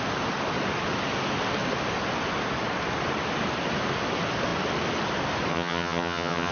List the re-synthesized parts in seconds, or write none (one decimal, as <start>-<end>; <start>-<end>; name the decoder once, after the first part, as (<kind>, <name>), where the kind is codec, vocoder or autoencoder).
5.5-6.5 (vocoder, HiFi-GAN)